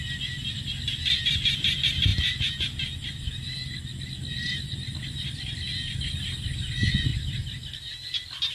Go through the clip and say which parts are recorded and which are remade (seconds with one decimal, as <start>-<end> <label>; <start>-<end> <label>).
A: 0.0-8.5 recorded